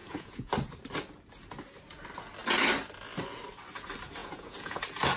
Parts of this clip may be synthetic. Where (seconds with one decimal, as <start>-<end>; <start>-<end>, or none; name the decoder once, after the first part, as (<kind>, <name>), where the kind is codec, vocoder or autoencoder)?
0.0-0.5 (vocoder, Vocos); 4.2-4.8